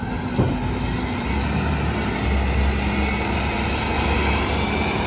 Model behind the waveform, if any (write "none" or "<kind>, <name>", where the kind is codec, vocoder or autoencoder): none